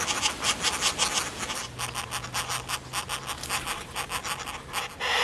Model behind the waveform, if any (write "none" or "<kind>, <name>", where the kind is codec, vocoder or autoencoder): none